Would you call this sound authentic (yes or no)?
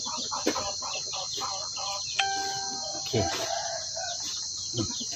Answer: yes